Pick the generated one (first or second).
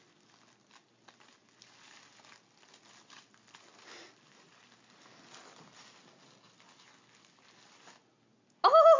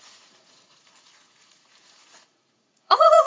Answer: second